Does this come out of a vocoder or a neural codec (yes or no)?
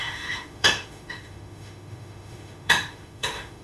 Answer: yes